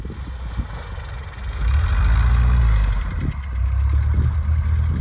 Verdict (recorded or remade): recorded